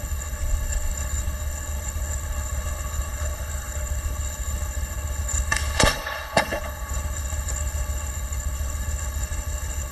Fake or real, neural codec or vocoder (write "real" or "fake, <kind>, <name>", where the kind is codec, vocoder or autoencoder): fake, codec, HILCodec